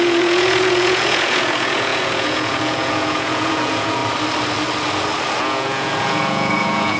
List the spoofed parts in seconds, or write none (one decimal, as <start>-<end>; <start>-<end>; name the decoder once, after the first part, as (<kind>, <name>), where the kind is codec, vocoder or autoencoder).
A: 0.0-4.0 (vocoder, Vocos); 5.4-7.0